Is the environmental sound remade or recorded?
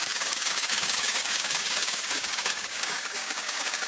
remade